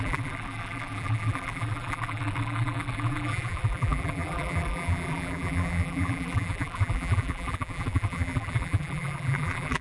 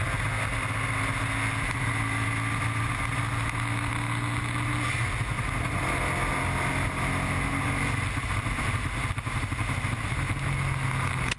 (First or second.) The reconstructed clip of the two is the first